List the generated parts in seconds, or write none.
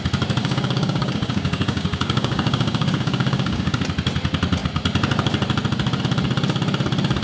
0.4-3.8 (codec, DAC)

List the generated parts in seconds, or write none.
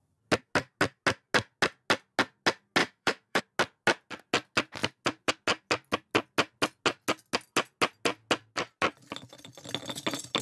2.8-3.4 (autoencoder, DAC-VAE)